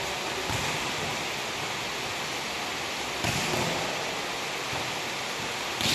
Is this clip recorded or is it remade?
recorded